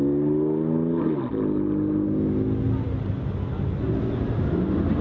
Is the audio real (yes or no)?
yes